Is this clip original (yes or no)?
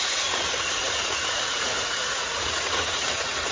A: no